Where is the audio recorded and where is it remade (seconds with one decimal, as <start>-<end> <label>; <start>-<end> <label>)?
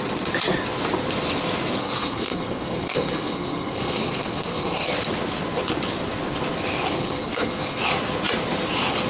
0.0-1.8 recorded; 1.8-4.9 remade; 4.9-6.9 recorded; 6.9-7.8 remade; 7.8-9.1 recorded